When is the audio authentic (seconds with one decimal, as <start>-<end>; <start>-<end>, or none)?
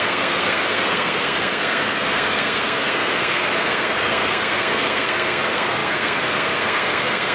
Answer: none